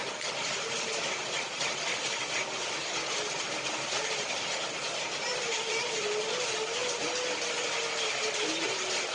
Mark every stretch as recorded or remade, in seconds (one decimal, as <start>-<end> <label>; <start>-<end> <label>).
0.0-5.3 recorded; 5.3-6.1 remade; 6.1-9.1 recorded